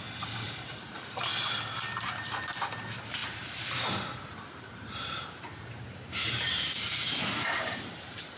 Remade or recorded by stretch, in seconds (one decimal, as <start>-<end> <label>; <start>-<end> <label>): 0.0-1.3 remade; 1.3-2.2 recorded; 2.2-8.4 remade